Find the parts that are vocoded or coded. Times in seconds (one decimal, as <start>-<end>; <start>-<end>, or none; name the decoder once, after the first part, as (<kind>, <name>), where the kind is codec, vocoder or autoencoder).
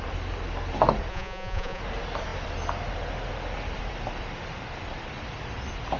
1.1-1.8 (vocoder, Vocos)